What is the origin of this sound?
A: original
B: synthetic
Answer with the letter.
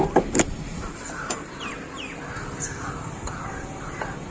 B